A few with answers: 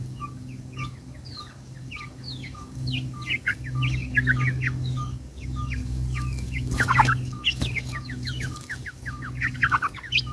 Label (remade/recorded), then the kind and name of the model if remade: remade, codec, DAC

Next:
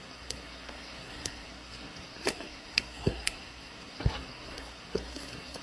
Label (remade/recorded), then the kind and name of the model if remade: remade, codec, SNAC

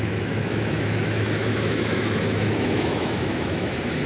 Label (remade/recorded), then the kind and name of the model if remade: remade, autoencoder, DAC-VAE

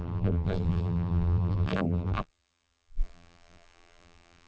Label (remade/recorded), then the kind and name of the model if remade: remade, vocoder, BigVGAN v2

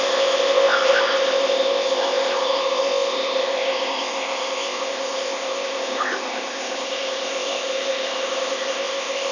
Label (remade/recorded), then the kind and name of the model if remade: remade, codec, ZipCodec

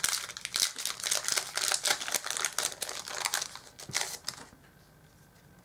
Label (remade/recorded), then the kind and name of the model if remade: recorded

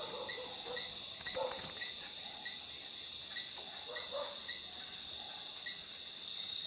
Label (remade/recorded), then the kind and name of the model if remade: recorded